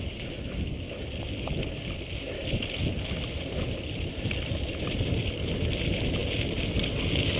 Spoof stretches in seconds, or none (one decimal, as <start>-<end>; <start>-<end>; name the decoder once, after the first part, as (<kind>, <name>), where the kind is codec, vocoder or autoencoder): 2.4-4.7 (vocoder, BigVGAN v2)